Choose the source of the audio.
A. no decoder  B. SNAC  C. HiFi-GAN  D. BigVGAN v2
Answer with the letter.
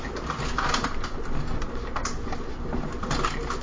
A